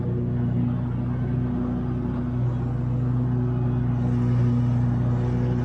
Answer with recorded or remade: recorded